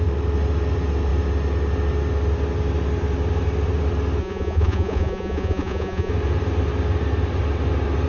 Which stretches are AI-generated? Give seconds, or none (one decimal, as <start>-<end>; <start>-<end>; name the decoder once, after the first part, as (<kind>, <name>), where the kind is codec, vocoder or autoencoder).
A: 4.2-6.1 (vocoder, Vocos)